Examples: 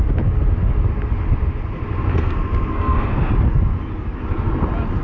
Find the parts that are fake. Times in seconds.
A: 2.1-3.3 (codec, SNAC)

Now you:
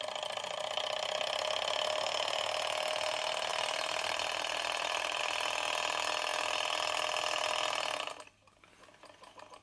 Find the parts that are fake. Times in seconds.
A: 3.5-5.2 (vocoder, BigVGAN v2)

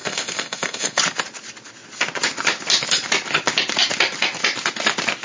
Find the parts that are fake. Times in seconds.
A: 0.0-1.0 (codec, SNAC)

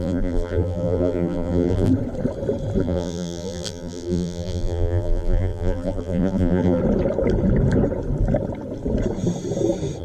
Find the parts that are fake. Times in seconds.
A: 0.0-1.9 (vocoder, BigVGAN v2); 2.8-6.8

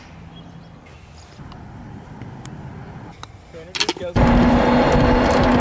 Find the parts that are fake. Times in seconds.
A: none